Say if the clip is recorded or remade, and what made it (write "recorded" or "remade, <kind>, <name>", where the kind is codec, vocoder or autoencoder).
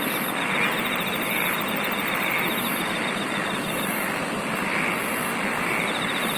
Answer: recorded